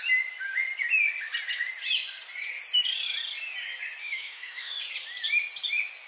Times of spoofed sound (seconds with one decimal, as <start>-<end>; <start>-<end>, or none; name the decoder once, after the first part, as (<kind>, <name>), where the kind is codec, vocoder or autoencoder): 4.0-4.8 (autoencoder, DAC-VAE)